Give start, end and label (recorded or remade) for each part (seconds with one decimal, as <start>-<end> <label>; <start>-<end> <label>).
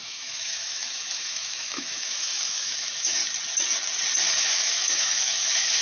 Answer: 0.0-3.2 remade; 3.2-4.4 recorded; 4.4-5.8 remade